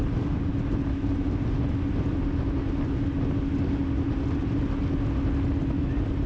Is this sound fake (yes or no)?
no